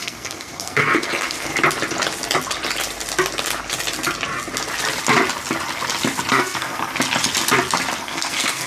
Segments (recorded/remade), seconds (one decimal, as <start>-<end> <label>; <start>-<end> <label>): 0.0-1.5 remade; 1.5-6.3 recorded; 6.3-6.9 remade; 6.9-8.0 recorded; 8.0-8.7 remade